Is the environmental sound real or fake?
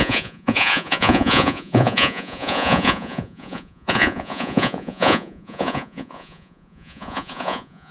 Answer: fake